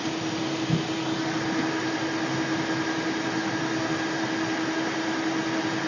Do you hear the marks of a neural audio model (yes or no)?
no